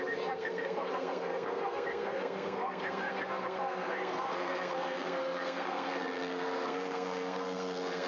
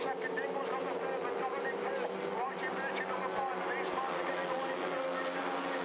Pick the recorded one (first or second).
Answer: second